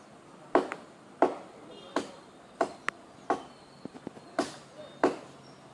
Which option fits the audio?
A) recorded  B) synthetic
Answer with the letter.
A